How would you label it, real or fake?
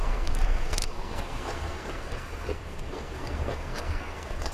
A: fake